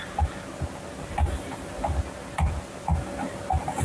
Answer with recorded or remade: recorded